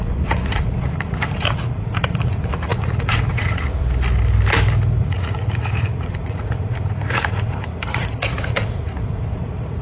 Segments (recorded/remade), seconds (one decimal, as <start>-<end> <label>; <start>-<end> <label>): 0.0-3.8 remade; 3.8-5.0 recorded; 5.0-9.8 remade